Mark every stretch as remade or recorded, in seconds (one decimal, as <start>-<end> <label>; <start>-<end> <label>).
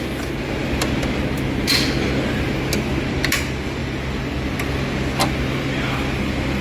0.0-6.6 recorded